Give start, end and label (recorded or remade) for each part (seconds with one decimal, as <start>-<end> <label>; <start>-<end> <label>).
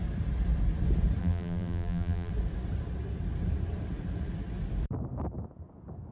0.0-1.2 recorded; 1.2-2.3 remade; 2.3-6.1 recorded